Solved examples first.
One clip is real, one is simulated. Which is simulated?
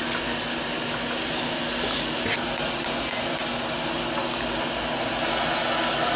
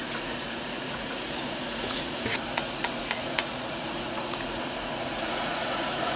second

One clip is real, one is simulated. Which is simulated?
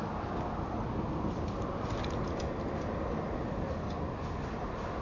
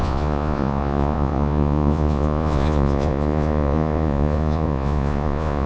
second